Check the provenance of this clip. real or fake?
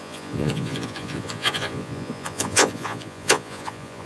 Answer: fake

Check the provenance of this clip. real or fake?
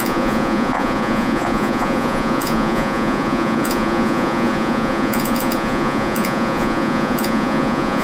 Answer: fake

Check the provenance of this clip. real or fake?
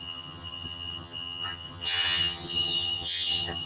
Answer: fake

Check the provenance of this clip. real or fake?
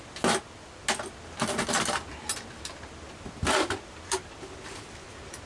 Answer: real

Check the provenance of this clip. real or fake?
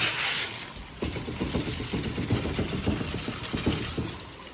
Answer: real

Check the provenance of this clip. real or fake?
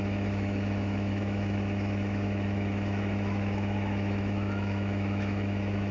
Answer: fake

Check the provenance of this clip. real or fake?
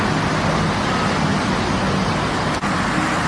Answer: real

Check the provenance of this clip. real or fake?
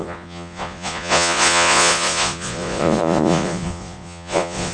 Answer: fake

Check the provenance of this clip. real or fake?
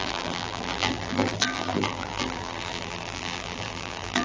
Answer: fake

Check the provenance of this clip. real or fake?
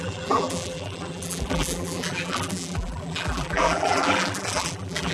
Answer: fake